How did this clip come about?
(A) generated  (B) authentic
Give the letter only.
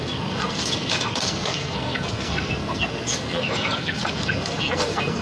A